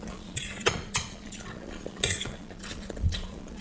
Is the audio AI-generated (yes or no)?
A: yes